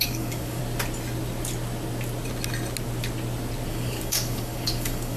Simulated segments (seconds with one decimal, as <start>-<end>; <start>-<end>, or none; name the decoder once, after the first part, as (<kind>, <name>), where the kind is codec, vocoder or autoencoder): 0.0-0.6 (codec, DAC); 3.7-5.2